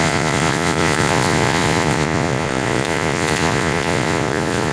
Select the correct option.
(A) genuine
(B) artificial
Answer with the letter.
B